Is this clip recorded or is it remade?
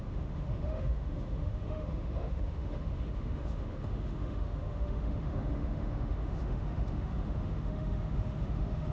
remade